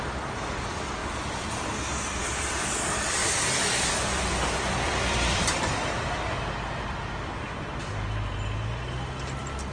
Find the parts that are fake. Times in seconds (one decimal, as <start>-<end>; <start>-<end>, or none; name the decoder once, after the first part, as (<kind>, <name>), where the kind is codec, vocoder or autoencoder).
1.0-2.2 (vocoder, BigVGAN v2); 3.2-6.4